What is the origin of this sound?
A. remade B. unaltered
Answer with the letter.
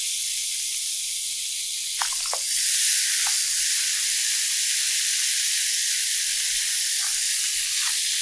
B